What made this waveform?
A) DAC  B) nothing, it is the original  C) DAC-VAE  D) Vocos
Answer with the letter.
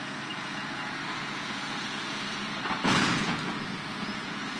D